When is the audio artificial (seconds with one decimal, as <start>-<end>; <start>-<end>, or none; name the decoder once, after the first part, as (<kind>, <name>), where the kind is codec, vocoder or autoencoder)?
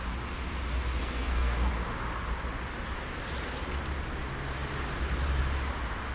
1.0-1.7 (codec, SNAC)